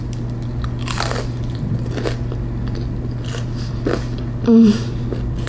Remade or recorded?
recorded